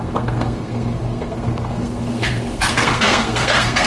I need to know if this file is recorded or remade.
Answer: remade